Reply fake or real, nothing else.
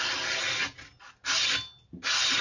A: real